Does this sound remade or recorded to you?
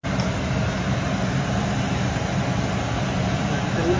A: recorded